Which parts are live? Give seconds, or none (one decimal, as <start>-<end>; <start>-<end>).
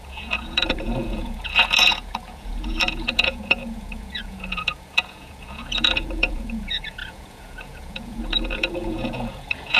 none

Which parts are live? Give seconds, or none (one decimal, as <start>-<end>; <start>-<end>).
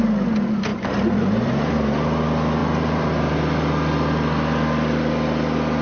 0.0-0.7; 1.7-2.6; 3.3-5.8